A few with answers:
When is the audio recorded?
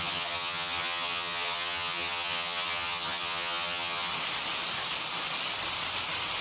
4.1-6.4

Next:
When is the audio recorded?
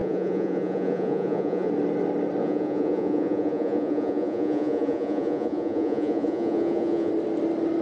1.7-2.4; 7.1-7.8